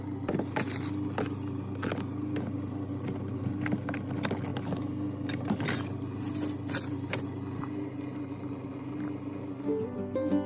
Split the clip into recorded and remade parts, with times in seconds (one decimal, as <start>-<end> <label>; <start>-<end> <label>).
0.0-10.5 recorded